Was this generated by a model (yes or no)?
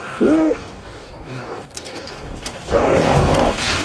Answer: yes